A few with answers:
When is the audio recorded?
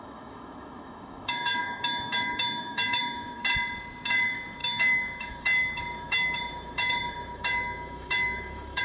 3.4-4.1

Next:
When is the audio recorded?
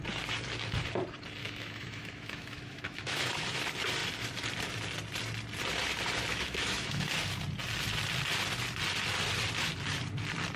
0.0-1.4; 3.6-6.3; 7.1-10.6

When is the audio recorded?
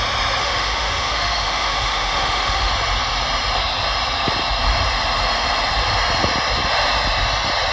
0.0-0.4; 2.7-7.7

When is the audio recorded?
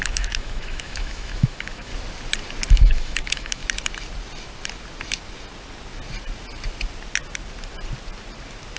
1.9-2.7; 3.6-8.8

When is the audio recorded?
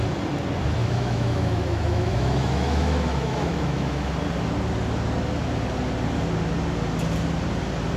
0.0-0.8; 4.1-8.0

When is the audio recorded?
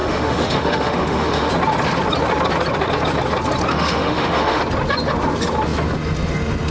1.5-3.7; 4.6-6.7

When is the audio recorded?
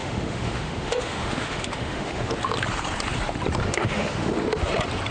2.3-3.6; 4.3-5.1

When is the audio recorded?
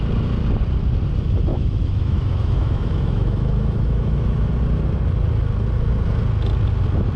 0.0-1.5; 4.5-7.2